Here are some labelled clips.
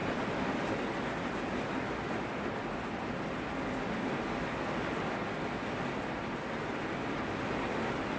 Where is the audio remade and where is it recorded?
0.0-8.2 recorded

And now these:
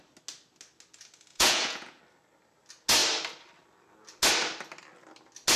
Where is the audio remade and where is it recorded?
0.0-1.3 recorded; 1.3-2.0 remade; 2.0-5.6 recorded

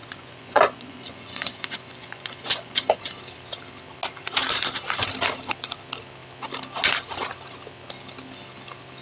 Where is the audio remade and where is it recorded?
0.0-3.0 remade; 3.0-9.0 recorded

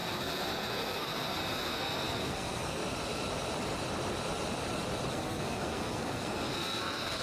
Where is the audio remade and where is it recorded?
0.0-2.8 remade; 2.8-5.1 recorded; 5.1-7.2 remade